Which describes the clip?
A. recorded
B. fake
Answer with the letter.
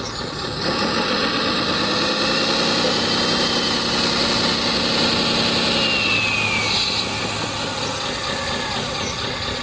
A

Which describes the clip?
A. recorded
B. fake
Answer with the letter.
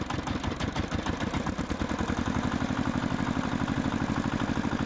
B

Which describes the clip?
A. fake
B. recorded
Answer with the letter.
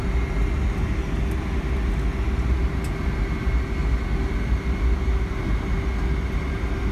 B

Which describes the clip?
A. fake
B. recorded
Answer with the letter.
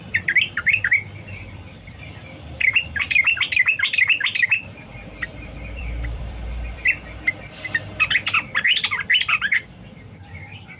A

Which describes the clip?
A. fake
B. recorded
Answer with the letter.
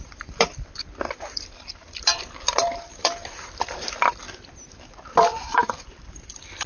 A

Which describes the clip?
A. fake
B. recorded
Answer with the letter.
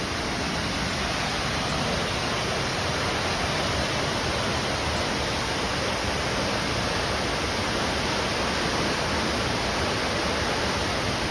B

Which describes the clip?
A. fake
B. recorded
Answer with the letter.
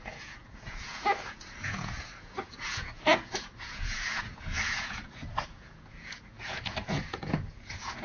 A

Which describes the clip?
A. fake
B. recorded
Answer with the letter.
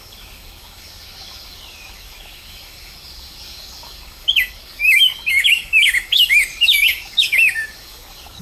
A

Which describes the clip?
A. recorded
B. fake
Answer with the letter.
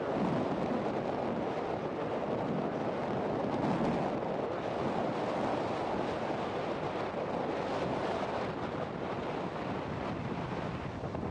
A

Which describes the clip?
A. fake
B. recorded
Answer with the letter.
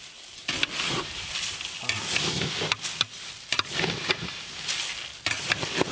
B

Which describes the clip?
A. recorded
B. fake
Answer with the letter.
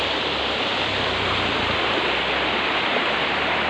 B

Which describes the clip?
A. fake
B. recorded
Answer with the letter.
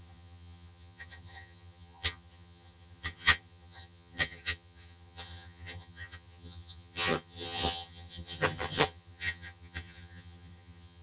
A